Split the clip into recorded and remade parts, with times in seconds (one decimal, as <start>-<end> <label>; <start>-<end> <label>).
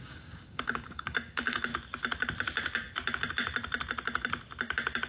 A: 0.0-1.7 remade; 1.7-5.1 recorded